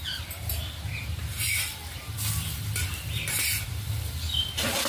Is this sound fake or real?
fake